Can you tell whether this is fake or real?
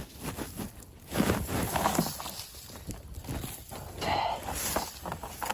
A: real